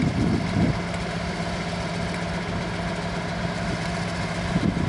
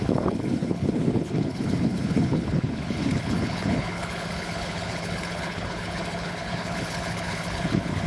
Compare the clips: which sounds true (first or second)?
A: first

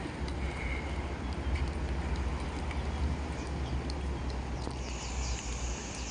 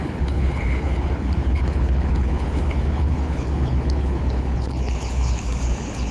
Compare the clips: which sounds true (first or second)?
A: first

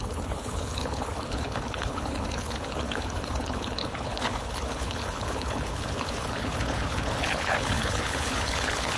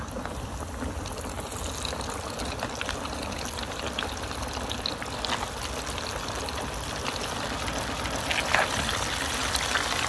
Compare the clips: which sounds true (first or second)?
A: second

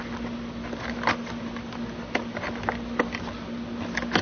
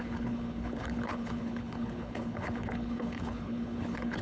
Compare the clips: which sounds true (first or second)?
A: first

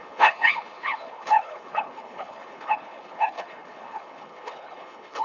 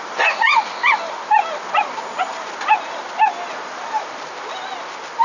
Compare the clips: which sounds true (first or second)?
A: second